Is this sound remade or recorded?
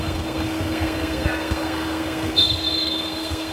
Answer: remade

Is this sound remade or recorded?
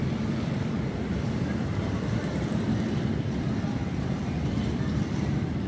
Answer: remade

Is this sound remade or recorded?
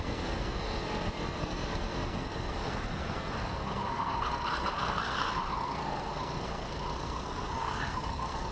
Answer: remade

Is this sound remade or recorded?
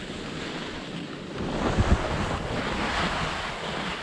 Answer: recorded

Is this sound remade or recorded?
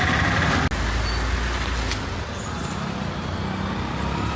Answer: recorded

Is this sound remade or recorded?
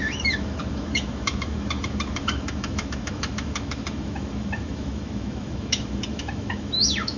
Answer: remade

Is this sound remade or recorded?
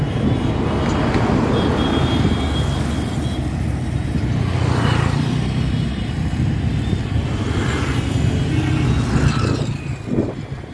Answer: recorded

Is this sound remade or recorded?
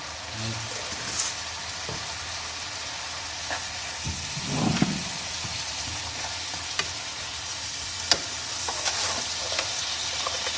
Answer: recorded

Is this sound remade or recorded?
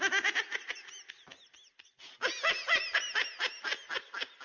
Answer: recorded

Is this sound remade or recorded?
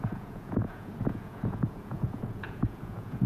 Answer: remade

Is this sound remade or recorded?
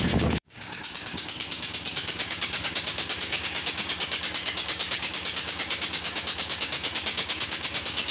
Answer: remade